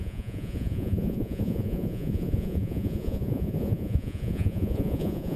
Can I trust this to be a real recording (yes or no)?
no